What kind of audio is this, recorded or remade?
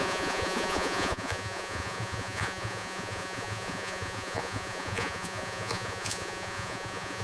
remade